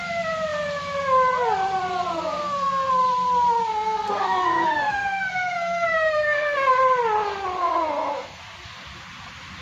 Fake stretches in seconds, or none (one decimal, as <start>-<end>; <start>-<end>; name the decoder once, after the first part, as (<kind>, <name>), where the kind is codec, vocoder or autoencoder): 2.1-2.9 (codec, SNAC); 3.7-6.7; 7.6-8.4